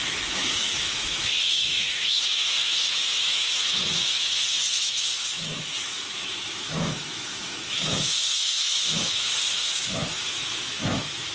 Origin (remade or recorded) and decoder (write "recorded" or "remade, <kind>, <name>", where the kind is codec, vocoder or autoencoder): remade, autoencoder, DAC-VAE